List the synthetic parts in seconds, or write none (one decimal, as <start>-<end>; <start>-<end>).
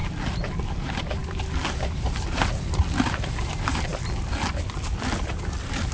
0.0-0.5; 1.2-2.5; 3.9-5.3